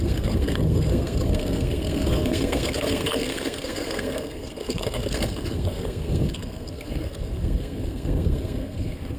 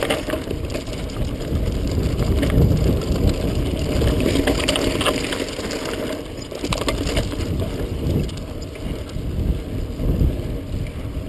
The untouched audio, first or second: second